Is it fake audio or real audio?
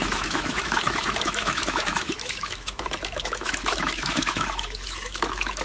fake